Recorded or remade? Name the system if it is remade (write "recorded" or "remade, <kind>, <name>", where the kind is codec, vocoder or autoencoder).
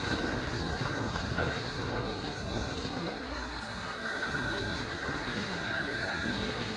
remade, codec, SNAC